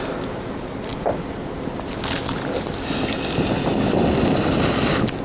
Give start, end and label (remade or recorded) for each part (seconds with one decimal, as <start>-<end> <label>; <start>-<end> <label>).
0.0-5.2 recorded